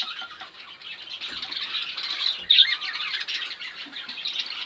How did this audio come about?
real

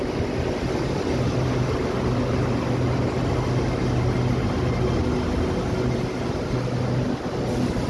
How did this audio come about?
real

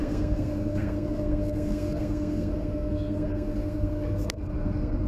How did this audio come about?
fake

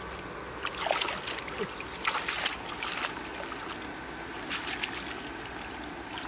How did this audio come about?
real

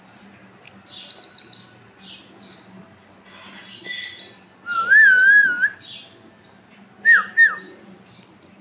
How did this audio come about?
real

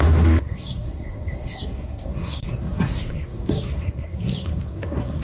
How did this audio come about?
fake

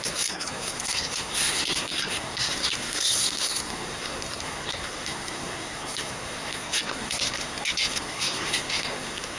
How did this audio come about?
fake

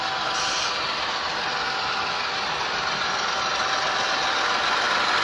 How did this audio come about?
real